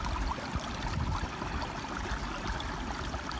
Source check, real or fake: real